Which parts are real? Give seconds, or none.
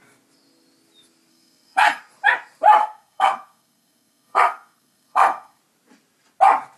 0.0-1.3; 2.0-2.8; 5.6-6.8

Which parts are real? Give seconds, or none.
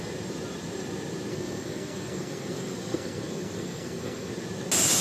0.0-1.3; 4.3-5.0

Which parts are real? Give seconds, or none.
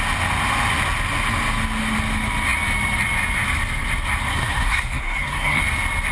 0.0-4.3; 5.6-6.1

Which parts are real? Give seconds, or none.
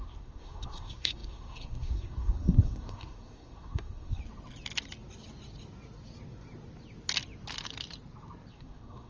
4.2-8.5